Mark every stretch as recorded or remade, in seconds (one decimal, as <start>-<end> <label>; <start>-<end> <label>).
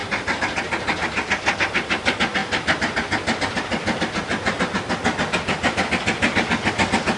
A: 0.0-7.2 recorded